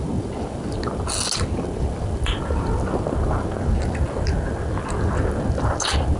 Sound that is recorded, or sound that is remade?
recorded